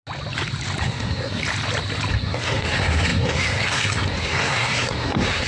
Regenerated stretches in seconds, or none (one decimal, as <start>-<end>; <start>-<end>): 0.8-1.4; 2.1-5.5